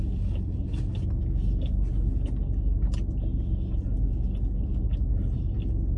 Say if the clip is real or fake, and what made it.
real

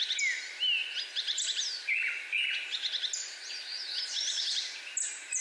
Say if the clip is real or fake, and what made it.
real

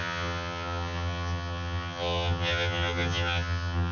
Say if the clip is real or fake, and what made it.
fake, vocoder, HiFi-GAN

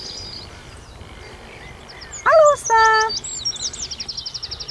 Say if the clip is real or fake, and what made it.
real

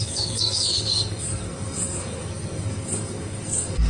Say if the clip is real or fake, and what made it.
fake, codec, SNAC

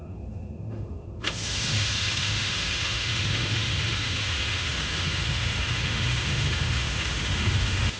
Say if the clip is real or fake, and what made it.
fake, autoencoder, DAC-VAE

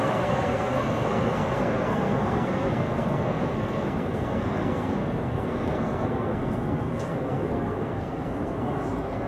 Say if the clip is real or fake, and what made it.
fake, codec, SNAC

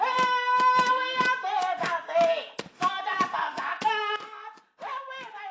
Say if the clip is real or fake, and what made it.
real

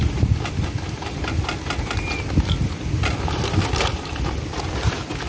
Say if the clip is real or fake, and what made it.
real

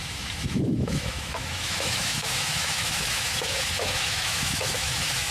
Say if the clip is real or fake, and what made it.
fake, autoencoder, DAC-VAE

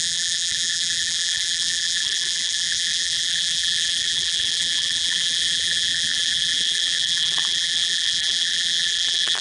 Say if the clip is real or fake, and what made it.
fake, vocoder, BigVGAN v2